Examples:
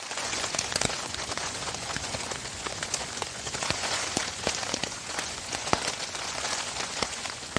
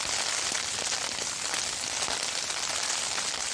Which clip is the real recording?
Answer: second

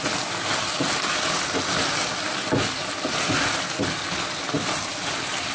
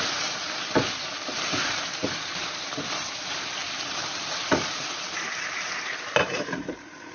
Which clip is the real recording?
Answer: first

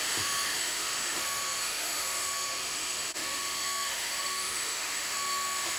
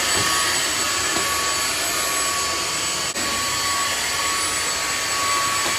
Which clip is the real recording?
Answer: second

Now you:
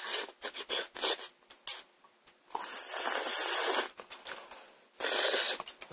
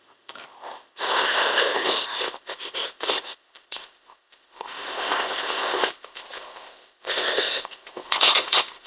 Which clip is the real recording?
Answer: first